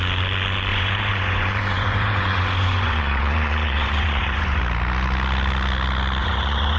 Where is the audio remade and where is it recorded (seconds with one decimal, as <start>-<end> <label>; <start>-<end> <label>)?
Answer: 0.0-0.7 recorded; 0.7-4.6 remade; 4.6-6.2 recorded; 6.2-6.8 remade